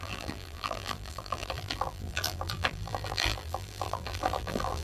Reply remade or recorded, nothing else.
remade